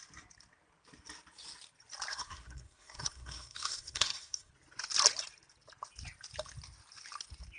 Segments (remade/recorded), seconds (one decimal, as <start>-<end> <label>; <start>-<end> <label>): 0.0-2.1 recorded; 2.1-4.5 remade; 4.5-7.6 recorded